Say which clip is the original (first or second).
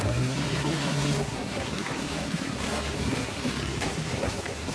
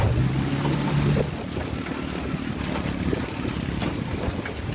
second